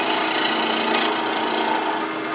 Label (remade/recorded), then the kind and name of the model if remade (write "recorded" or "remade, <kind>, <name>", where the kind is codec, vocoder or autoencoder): recorded